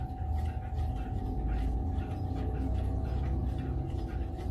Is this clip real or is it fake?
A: real